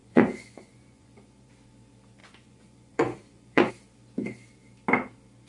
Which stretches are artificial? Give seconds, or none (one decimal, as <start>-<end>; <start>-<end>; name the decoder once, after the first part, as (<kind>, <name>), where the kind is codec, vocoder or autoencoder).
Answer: 0.0-1.5 (vocoder, Vocos); 2.2-3.7